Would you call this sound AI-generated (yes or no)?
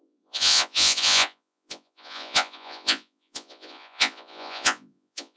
yes